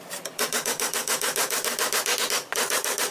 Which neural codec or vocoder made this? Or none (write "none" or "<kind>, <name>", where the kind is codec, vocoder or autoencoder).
none